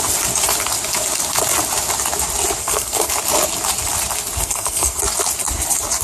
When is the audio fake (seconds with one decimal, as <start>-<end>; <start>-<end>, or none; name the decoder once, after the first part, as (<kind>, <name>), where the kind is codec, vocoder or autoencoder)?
2.6-3.1 (codec, SNAC); 4.4-5.0